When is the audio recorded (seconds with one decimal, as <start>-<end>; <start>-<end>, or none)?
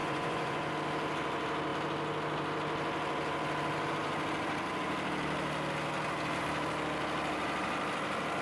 0.7-8.4